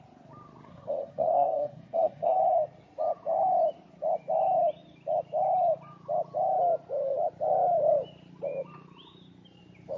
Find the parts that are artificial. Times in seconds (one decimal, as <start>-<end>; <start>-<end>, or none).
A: 0.7-2.4